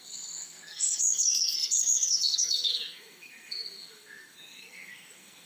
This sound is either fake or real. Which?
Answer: fake